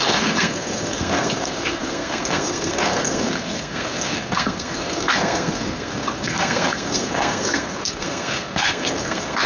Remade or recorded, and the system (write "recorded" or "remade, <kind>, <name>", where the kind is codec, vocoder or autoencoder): remade, codec, SNAC